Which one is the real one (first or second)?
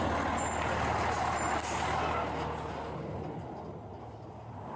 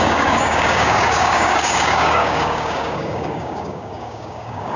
first